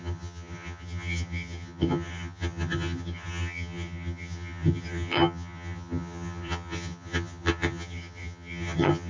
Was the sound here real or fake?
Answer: fake